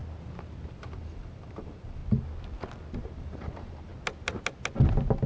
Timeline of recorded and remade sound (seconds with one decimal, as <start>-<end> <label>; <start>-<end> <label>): 0.0-0.7 recorded; 0.7-2.0 remade; 2.0-3.0 recorded; 3.0-3.9 remade; 3.9-5.3 recorded